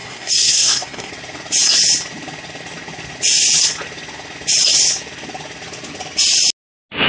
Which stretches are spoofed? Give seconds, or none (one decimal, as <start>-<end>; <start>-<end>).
0.0-1.1